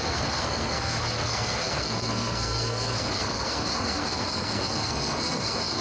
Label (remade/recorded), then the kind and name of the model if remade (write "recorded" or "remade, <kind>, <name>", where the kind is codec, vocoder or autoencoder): remade, codec, SNAC